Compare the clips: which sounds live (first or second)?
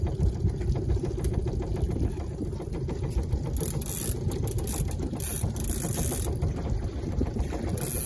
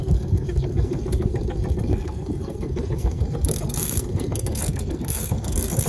first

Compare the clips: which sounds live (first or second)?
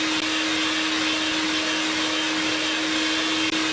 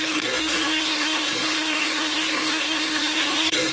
first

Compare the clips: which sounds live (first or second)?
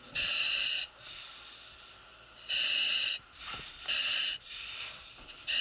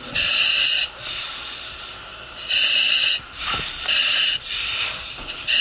first